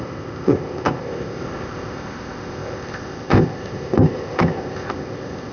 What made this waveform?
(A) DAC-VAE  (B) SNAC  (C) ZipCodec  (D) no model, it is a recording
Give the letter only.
C